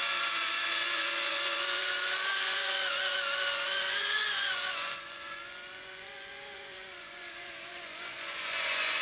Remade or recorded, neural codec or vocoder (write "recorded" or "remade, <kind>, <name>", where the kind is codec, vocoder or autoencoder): remade, vocoder, Vocos